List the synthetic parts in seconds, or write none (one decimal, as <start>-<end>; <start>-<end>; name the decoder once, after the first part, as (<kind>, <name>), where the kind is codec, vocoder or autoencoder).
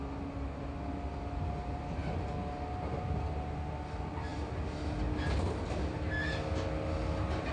none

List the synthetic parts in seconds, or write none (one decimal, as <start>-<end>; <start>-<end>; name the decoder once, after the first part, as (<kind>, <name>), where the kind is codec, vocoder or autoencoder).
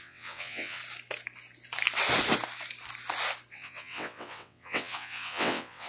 0.0-0.8 (vocoder, WaveNeXt); 3.5-5.9